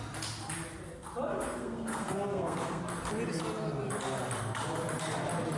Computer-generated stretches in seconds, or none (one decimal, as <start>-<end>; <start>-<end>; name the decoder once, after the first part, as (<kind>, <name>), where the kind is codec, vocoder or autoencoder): 1.3-2.8 (codec, SNAC)